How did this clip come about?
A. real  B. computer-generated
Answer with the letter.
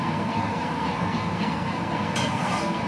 B